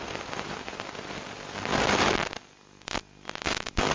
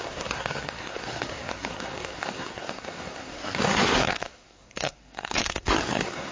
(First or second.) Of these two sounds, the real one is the first